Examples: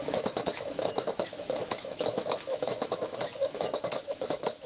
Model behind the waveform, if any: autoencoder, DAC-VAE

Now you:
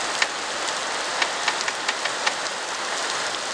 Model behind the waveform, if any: none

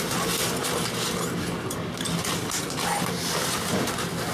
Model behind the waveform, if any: none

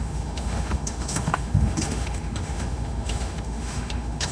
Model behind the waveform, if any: autoencoder, DAC-VAE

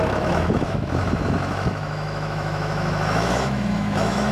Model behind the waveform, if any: autoencoder, DAC-VAE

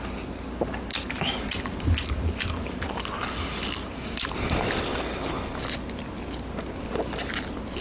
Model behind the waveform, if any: none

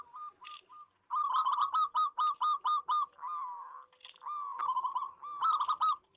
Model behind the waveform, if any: none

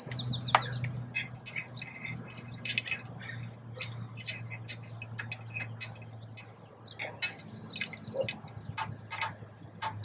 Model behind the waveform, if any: none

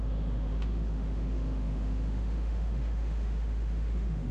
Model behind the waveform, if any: autoencoder, DAC-VAE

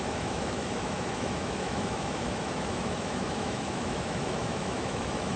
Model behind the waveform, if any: autoencoder, DAC-VAE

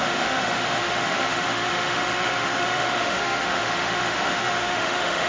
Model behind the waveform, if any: autoencoder, DAC-VAE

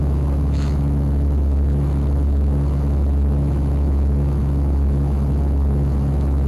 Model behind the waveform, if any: autoencoder, DAC-VAE